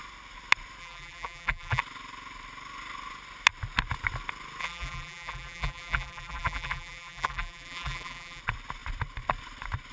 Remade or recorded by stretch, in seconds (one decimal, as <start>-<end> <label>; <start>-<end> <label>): 0.0-0.8 recorded; 0.8-1.8 remade; 1.8-4.6 recorded; 4.6-8.4 remade; 8.4-9.9 recorded